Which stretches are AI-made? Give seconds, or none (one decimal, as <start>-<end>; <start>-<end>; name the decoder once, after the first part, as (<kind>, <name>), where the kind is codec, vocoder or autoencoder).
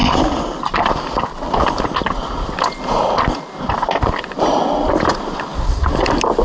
none